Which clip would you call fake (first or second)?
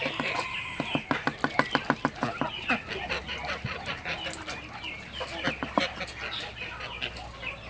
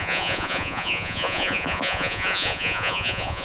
second